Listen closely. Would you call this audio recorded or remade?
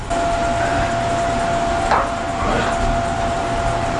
recorded